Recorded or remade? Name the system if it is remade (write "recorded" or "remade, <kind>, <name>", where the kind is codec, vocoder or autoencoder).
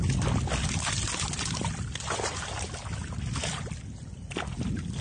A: recorded